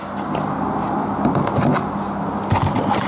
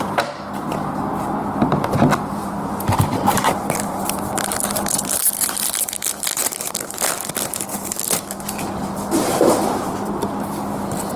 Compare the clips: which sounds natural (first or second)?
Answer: first